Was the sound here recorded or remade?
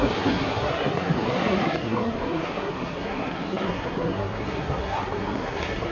remade